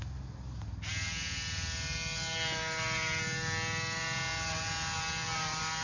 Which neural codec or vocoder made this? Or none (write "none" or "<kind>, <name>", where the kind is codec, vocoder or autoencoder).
none